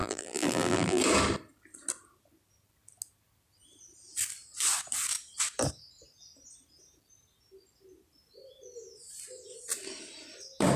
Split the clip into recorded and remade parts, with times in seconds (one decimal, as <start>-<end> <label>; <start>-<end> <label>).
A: 0.0-1.0 remade; 1.0-10.8 recorded